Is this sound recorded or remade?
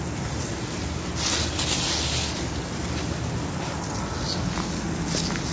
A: recorded